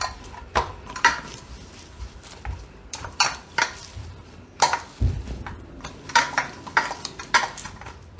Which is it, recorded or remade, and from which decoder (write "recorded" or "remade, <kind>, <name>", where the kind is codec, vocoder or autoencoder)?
remade, vocoder, BigVGAN v2